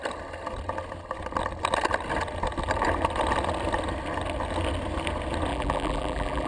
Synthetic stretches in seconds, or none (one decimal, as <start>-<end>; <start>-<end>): 5.5-6.5